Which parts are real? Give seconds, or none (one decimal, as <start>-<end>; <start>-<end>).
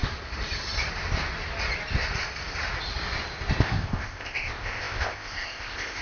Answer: 0.0-3.6